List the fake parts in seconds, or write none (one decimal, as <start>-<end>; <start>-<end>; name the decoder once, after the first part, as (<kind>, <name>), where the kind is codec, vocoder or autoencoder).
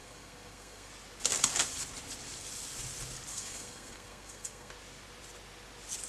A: 0.0-0.9 (codec, SNAC); 3.3-4.7